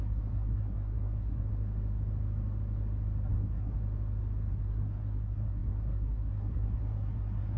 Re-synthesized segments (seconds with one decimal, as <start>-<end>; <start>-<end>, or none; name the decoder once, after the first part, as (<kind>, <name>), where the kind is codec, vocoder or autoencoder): 0.0-1.5 (codec, SNAC); 3.3-3.8; 4.5-7.6